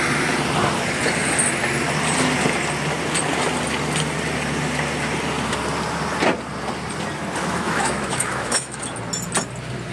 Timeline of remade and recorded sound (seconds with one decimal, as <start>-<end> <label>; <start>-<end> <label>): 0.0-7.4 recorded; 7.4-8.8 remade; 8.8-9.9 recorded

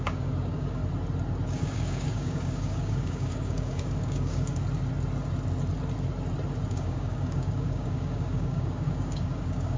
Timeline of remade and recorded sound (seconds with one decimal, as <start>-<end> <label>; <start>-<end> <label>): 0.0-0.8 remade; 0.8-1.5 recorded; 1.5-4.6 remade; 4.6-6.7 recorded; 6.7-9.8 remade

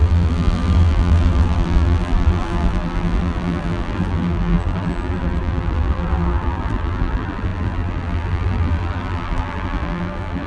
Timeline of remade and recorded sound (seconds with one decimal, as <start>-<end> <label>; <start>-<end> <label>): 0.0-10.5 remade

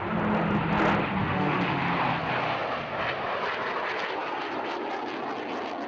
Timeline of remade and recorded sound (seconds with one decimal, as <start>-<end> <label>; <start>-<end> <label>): 0.0-1.2 recorded; 1.2-1.8 remade; 1.8-5.9 recorded

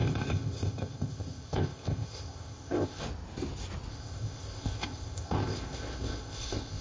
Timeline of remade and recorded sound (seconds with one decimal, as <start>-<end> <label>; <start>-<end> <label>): 0.0-3.0 remade; 3.0-3.9 recorded; 3.9-6.8 remade

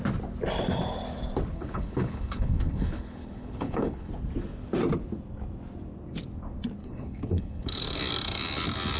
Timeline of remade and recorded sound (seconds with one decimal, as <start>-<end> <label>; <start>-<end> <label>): 0.0-1.5 recorded; 1.5-4.1 remade; 4.1-6.8 recorded; 6.8-8.0 remade; 8.0-9.0 recorded

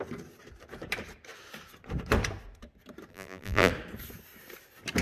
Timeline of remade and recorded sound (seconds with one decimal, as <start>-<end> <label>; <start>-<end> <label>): 0.0-3.1 recorded; 3.1-3.7 remade; 3.7-5.0 recorded

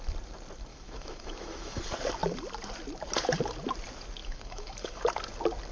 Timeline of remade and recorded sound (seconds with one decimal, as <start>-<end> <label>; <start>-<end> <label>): 0.0-0.7 recorded; 0.7-1.8 remade; 1.8-4.2 recorded; 4.2-5.0 remade; 5.0-5.7 recorded